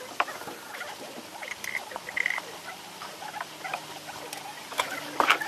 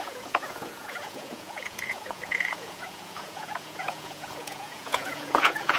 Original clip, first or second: first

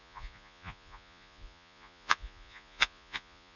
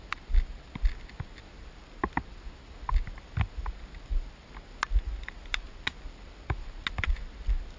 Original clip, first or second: second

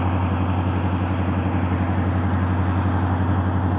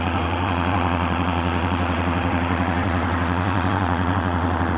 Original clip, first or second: first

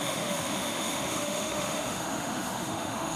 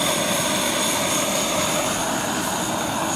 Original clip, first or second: second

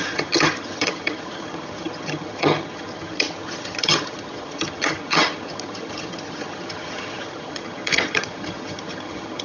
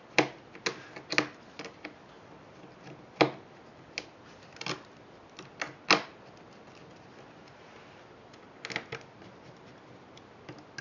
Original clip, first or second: second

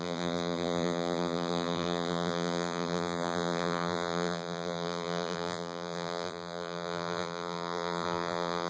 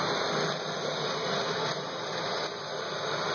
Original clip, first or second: second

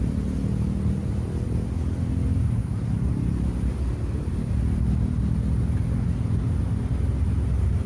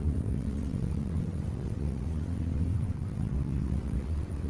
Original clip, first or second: first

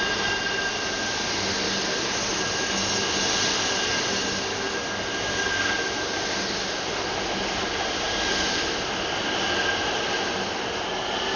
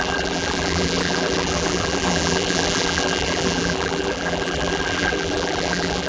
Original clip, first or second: first